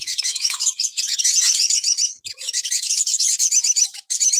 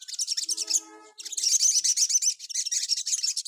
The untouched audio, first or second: second